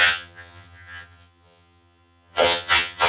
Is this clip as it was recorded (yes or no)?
no